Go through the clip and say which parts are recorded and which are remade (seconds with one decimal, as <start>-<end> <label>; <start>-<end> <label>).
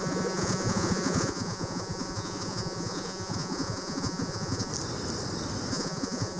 0.0-4.7 remade; 4.7-5.7 recorded; 5.7-6.4 remade